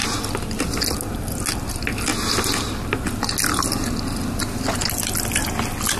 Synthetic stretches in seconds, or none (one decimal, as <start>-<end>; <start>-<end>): none